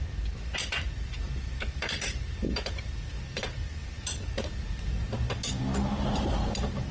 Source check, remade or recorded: recorded